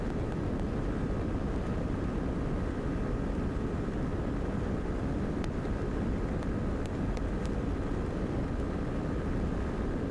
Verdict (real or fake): fake